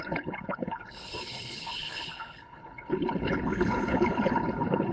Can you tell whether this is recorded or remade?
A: remade